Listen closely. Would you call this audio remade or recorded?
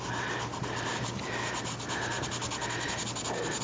recorded